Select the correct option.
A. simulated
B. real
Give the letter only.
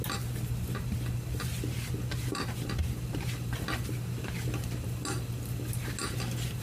B